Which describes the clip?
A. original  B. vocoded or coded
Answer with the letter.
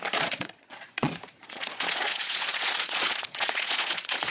B